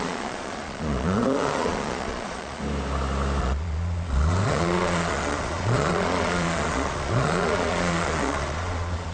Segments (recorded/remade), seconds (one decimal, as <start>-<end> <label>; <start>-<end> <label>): 0.0-2.6 remade; 2.6-3.4 recorded; 3.4-9.1 remade